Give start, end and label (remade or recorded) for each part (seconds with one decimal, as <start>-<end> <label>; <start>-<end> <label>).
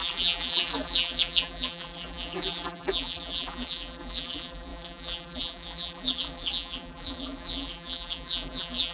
0.0-8.9 remade